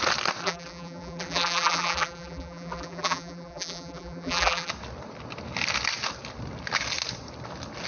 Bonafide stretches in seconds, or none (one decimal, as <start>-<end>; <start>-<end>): 0.0-0.4; 4.7-7.9